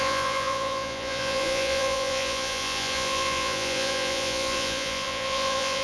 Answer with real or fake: fake